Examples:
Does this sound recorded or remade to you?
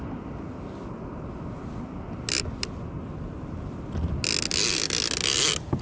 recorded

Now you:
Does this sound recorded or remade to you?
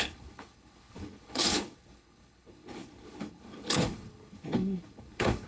remade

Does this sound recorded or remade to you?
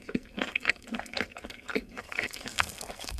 remade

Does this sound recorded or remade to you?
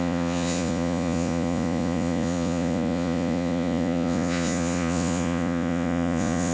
remade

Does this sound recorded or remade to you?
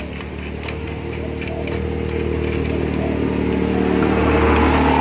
recorded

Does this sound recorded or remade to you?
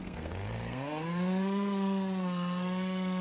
remade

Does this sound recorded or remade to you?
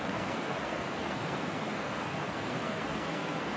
remade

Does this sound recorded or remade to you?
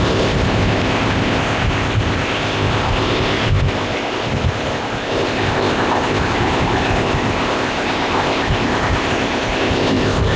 remade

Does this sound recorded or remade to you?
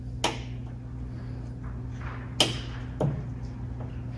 recorded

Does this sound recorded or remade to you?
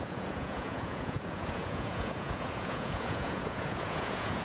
remade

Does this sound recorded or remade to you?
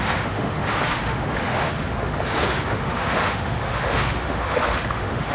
remade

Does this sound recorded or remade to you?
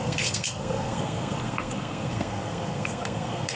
remade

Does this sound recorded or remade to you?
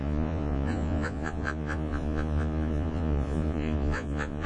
remade